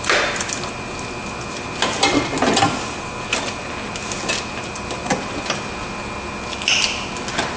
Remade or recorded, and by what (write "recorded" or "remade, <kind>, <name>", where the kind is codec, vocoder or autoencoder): recorded